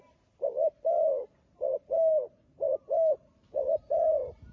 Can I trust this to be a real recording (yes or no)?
no